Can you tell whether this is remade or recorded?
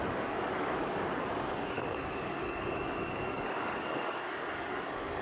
remade